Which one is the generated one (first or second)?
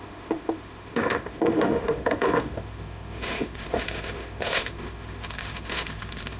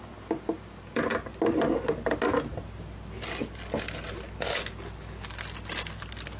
first